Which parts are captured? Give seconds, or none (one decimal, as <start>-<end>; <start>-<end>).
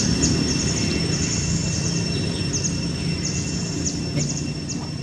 0.0-5.0